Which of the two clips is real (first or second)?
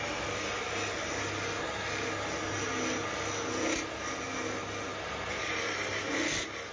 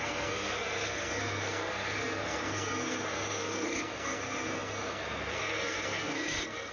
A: first